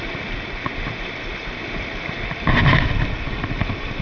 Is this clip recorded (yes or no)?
yes